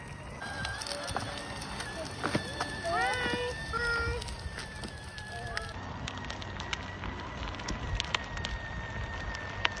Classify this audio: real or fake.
real